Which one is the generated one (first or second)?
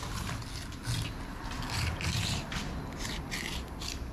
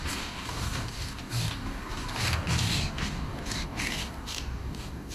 second